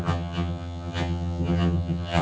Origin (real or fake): fake